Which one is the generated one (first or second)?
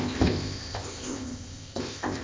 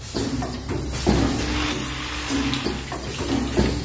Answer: first